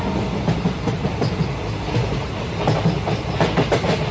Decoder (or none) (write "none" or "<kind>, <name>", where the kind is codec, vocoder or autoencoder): none